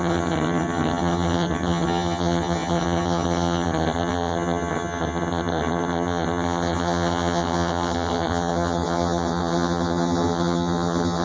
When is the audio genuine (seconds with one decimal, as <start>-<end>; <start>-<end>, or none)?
none